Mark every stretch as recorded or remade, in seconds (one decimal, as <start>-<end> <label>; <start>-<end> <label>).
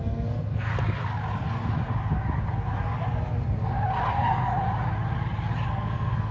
0.0-0.7 remade; 0.7-4.1 recorded; 4.1-4.5 remade; 4.5-5.7 recorded; 5.7-6.3 remade